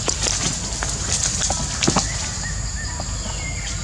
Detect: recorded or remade recorded